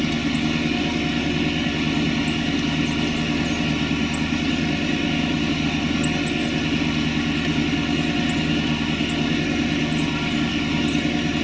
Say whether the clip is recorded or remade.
recorded